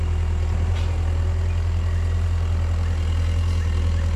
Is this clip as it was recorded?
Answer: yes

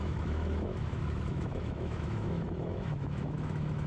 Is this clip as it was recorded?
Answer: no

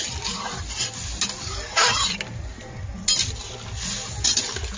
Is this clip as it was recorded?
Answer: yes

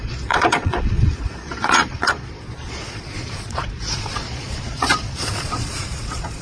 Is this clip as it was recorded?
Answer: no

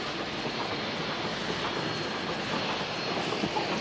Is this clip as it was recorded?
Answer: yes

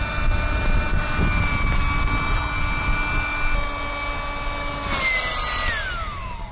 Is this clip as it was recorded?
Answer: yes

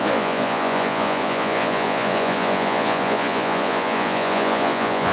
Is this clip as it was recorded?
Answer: no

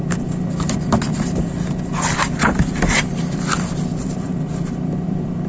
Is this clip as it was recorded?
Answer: no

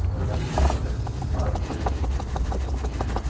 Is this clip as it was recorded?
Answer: yes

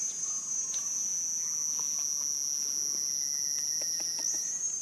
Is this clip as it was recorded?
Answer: yes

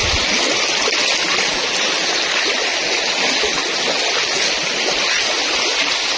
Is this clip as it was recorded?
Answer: yes